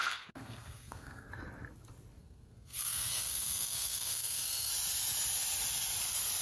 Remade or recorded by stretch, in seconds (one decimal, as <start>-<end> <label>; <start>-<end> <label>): 0.0-1.3 remade; 1.3-2.2 recorded; 2.2-4.7 remade; 4.7-6.4 recorded